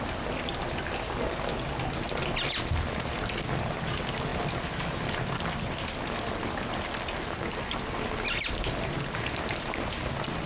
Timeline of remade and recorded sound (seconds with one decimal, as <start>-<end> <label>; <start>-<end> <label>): 0.0-10.5 recorded